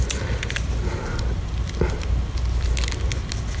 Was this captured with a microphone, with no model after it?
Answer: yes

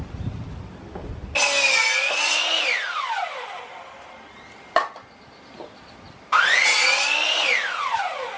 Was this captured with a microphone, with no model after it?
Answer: yes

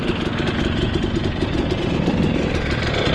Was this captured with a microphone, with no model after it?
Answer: yes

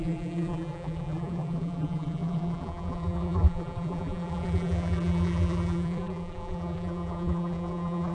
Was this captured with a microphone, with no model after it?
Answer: no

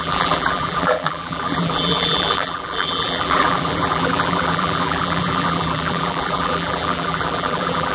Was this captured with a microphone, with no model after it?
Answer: no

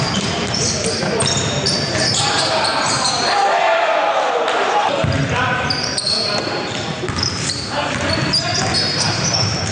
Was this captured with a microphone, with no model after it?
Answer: no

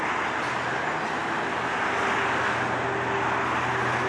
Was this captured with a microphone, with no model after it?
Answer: yes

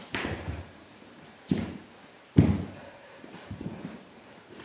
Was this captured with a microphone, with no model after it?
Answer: no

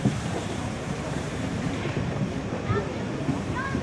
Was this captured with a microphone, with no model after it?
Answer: no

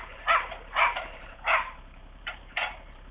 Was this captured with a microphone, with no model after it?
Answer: no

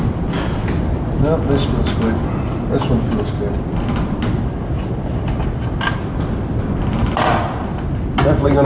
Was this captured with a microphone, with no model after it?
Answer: yes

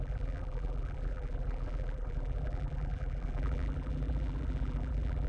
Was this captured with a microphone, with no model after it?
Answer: no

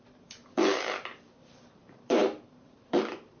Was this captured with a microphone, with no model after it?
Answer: no